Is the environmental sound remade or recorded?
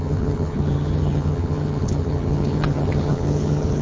remade